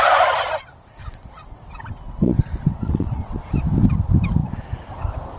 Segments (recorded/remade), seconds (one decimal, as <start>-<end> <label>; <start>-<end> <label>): 0.0-1.0 recorded; 1.0-3.4 remade; 3.4-5.4 recorded